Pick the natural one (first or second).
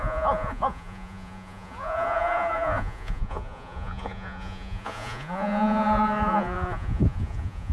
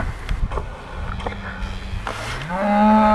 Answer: second